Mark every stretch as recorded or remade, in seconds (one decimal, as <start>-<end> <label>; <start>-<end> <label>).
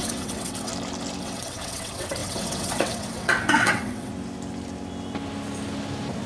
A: 0.0-0.7 remade; 0.7-1.2 recorded; 1.2-4.1 remade; 4.1-6.3 recorded